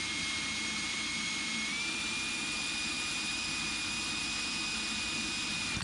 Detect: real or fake fake